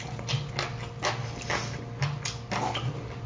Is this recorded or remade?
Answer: recorded